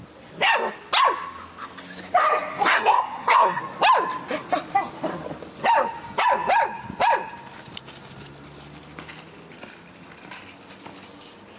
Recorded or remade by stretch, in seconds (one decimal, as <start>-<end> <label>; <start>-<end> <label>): 0.0-2.7 recorded; 2.7-3.6 remade; 3.6-11.6 recorded